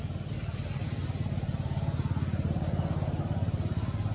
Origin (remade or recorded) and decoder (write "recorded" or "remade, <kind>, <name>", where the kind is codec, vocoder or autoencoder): recorded